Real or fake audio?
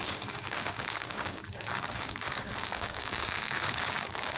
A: fake